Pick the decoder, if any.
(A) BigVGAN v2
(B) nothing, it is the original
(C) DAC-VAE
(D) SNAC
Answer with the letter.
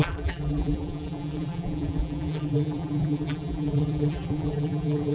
A